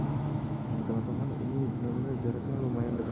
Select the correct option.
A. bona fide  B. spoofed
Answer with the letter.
B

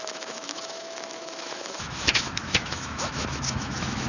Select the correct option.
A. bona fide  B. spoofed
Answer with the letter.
B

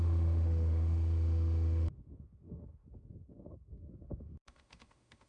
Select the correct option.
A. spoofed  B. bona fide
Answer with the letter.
A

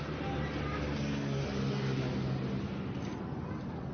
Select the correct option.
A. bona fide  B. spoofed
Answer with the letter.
A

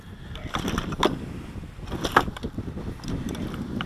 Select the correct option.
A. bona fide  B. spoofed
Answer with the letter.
A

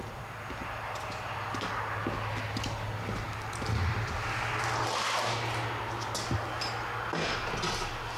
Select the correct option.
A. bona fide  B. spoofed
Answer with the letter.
A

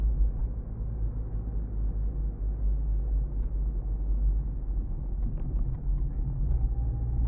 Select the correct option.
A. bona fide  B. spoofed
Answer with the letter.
A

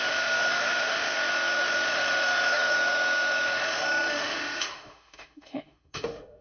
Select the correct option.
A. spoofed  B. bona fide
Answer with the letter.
A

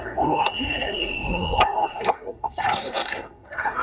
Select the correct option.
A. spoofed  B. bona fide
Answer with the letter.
A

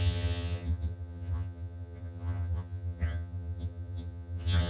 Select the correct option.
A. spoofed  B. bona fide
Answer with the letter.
A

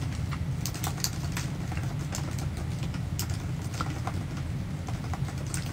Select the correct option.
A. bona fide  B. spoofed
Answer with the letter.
A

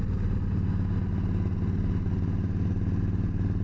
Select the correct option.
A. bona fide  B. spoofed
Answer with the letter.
A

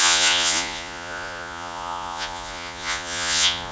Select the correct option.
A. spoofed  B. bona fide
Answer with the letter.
A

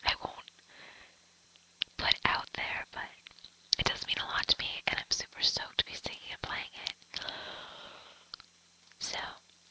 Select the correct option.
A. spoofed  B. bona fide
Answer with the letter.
B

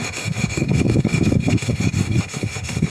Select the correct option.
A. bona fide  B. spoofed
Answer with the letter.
B